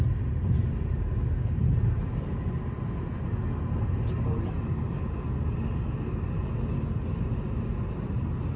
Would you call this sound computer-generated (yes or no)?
no